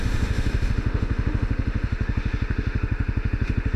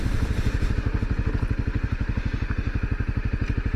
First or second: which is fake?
first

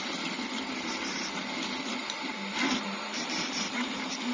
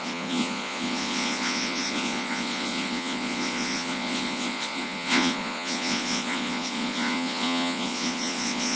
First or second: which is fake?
second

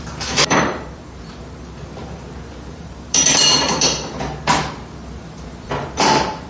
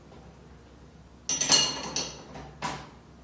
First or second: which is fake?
first